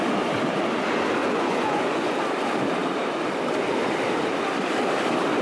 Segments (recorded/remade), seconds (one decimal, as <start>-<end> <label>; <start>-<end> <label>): 0.0-1.2 recorded; 1.2-2.1 remade; 2.1-5.4 recorded